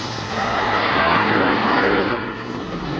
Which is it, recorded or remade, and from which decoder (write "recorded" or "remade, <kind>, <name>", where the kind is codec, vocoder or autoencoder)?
remade, codec, SNAC